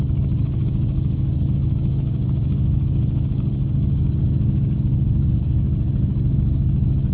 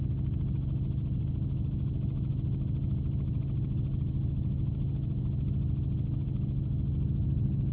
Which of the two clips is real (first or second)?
second